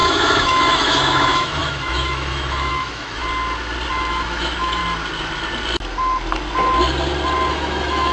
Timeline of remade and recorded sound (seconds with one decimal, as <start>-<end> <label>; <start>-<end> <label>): 0.0-3.2 remade; 3.2-3.9 recorded; 3.9-4.8 remade; 4.8-7.5 recorded; 7.5-8.1 remade